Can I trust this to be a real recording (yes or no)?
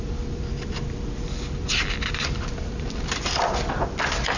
no